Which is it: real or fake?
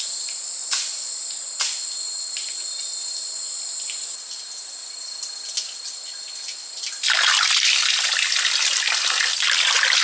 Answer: real